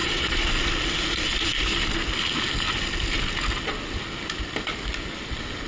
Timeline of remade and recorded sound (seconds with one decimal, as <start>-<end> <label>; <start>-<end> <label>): 0.0-0.5 remade; 0.5-5.7 recorded